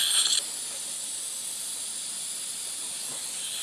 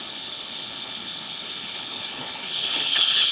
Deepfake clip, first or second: second